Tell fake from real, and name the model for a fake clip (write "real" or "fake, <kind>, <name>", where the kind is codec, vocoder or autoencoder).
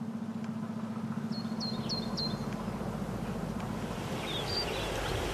real